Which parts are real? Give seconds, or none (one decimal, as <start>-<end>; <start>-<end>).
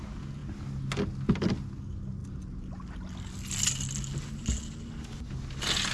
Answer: 0.0-5.9